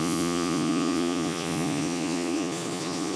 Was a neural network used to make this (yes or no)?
yes